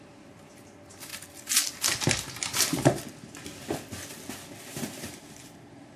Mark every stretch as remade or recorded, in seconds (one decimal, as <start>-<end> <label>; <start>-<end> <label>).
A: 0.0-1.1 remade; 1.1-4.7 recorded; 4.7-6.0 remade